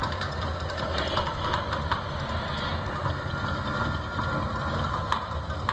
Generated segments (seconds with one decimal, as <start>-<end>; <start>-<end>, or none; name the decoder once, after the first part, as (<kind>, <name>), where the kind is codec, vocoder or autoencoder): none